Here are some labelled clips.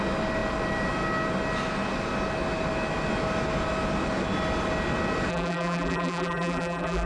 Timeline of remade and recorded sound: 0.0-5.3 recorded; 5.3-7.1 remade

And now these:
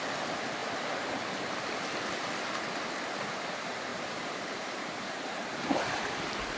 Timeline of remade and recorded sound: 0.0-3.9 recorded; 3.9-6.6 remade

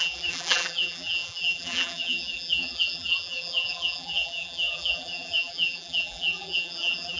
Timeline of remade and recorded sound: 0.0-7.2 remade

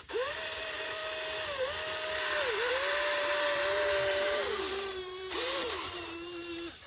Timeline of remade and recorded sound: 0.0-1.0 remade; 1.0-2.7 recorded; 2.7-6.9 remade

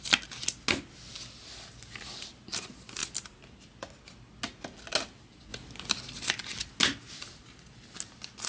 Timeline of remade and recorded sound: 0.0-8.5 recorded

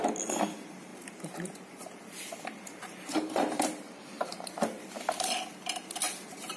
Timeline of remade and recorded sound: 0.0-0.9 recorded; 0.9-4.9 remade; 4.9-6.6 recorded